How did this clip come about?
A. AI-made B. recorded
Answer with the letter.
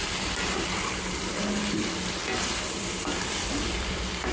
A